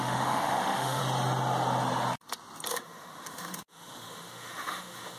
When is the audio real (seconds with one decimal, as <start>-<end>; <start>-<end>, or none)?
1.0-2.7